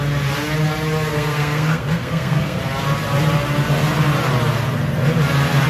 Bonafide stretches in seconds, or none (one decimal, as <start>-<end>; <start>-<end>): 0.0-1.1; 2.6-5.7